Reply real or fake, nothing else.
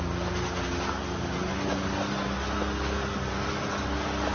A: real